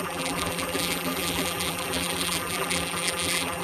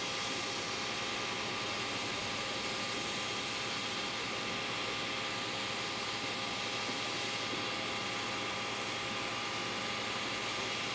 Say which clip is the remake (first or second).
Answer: first